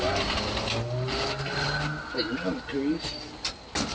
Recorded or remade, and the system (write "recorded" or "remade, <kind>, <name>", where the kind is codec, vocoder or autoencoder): recorded